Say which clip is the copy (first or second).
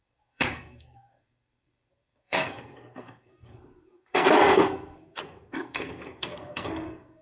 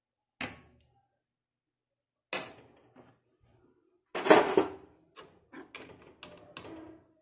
first